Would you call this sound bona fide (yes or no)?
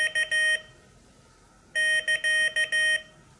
yes